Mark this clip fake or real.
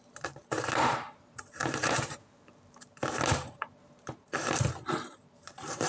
fake